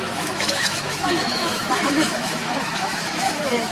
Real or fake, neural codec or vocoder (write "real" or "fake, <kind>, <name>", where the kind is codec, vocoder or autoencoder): fake, autoencoder, DAC-VAE